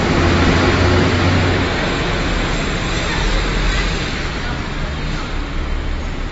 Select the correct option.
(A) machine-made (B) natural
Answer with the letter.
B